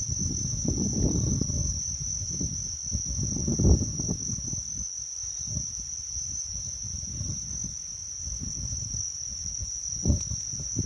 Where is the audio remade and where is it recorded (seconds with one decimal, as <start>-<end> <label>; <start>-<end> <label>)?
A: 0.0-2.1 remade; 2.1-6.0 recorded; 6.0-10.9 remade

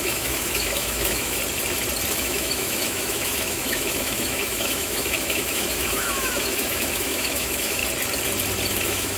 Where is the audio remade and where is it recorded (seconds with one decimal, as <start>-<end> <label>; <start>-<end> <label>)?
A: 0.0-1.4 remade; 1.4-2.1 recorded; 2.1-7.8 remade; 7.8-8.7 recorded; 8.7-9.2 remade

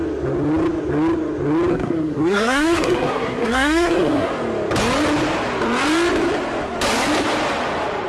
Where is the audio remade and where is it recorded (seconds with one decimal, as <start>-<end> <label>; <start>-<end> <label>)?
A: 0.0-1.7 recorded; 1.7-4.3 remade; 4.3-8.1 recorded